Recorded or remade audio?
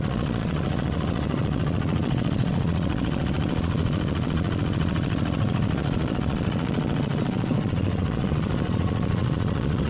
remade